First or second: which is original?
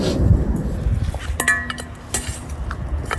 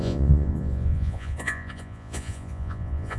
first